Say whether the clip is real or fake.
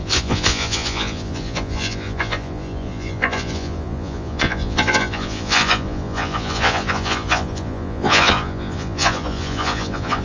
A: fake